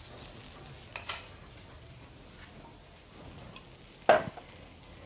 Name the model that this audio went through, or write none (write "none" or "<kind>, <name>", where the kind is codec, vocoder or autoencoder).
none